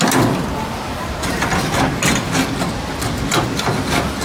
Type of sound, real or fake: real